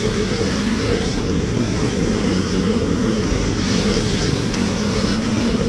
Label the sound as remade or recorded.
remade